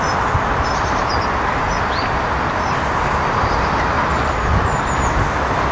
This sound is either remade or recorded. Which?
recorded